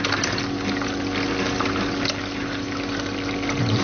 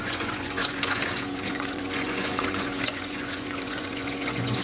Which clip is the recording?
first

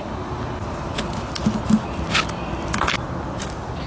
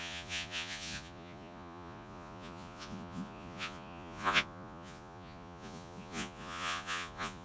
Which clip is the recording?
first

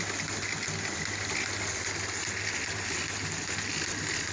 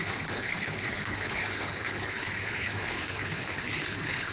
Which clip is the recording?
first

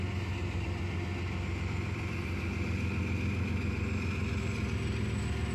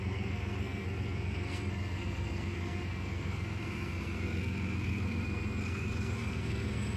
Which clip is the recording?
first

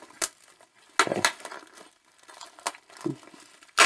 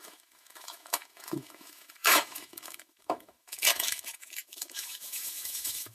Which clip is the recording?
first